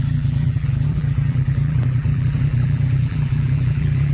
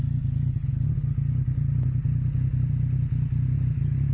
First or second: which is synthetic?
first